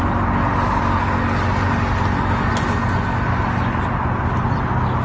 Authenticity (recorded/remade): recorded